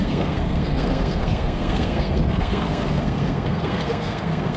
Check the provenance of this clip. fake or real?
fake